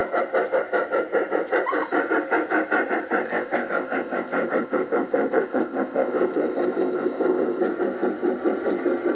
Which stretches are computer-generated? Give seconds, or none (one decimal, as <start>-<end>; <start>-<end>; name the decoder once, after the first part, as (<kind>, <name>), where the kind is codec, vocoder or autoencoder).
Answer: 3.2-7.6 (codec, ZipCodec)